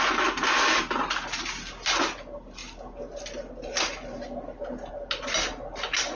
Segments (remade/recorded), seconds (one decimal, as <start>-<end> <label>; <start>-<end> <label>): 0.0-6.1 recorded